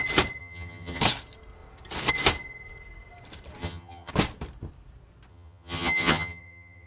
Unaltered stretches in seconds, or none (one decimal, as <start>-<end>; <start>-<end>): 0.0-0.4; 1.0-3.6; 4.1-5.3